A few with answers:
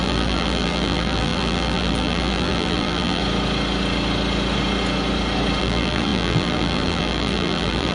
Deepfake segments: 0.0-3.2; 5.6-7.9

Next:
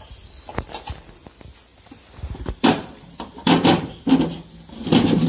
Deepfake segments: 1.7-4.0

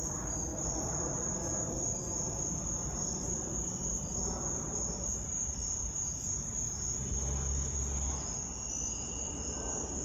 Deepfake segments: 0.5-2.4

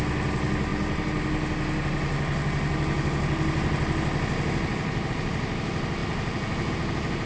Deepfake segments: none

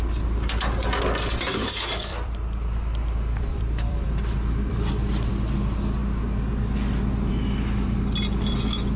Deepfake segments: 2.1-5.3

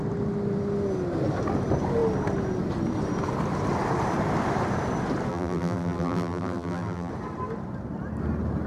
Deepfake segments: 5.3-7.1

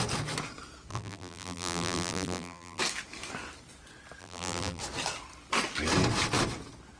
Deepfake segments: 0.9-2.8; 4.2-4.8